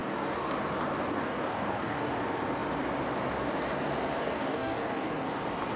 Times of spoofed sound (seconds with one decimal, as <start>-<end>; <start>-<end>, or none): 0.0-0.5; 1.1-2.1; 4.2-5.2